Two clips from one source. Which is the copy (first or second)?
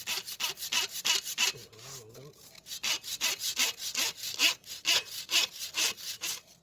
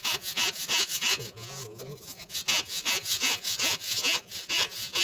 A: second